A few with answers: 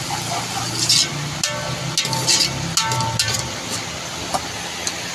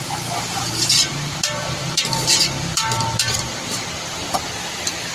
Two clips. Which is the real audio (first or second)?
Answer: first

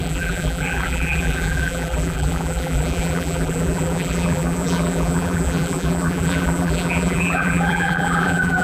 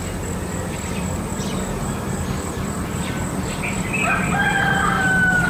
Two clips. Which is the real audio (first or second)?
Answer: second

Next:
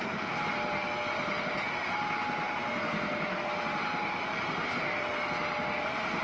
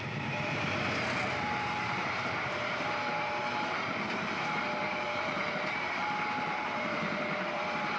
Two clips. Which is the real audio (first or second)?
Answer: first